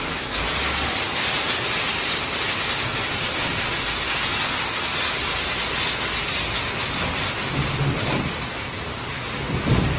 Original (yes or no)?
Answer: yes